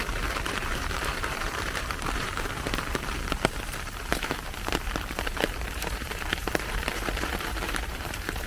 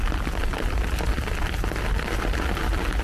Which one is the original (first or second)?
second